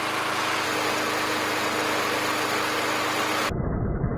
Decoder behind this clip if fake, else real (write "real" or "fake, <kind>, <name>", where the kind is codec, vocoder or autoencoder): real